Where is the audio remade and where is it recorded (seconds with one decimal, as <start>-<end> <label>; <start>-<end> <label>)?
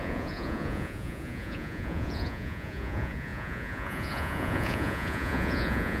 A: 0.0-6.0 remade